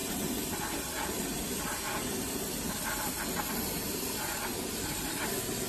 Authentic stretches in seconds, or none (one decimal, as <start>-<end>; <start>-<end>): 0.0-5.7